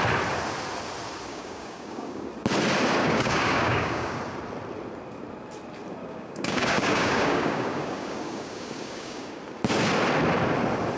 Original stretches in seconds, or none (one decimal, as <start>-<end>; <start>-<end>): 0.0-1.3; 2.3-3.0; 4.2-6.0; 9.4-11.0